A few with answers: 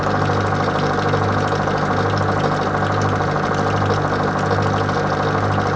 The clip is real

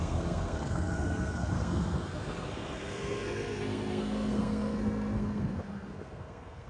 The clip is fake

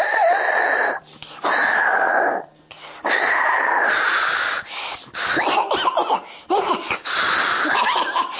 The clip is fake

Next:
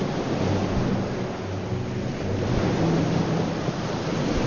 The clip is real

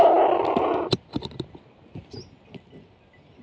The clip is real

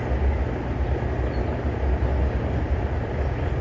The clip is real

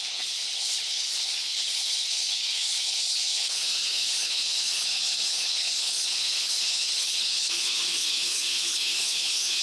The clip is fake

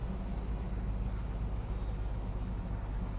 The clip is real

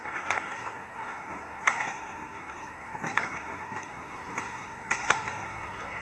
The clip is fake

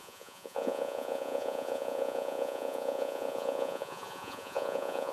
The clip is fake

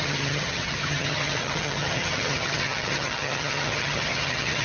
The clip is fake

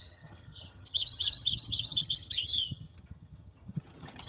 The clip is fake